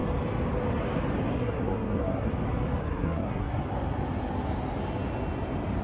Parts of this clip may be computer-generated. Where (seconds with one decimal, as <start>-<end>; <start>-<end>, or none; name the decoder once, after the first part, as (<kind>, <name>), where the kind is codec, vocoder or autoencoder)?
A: 1.3-2.3 (codec, SNAC); 2.8-3.6